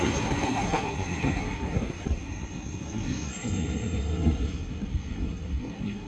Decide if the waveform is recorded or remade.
remade